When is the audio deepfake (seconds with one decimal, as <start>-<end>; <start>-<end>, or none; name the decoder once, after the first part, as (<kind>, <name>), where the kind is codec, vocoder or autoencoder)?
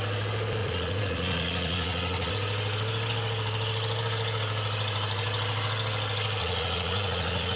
0.6-2.3 (vocoder, Vocos); 6.4-7.6